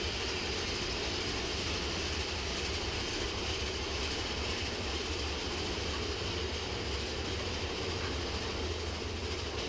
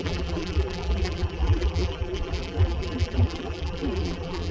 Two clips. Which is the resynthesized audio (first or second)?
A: second